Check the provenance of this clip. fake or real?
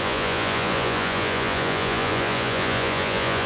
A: fake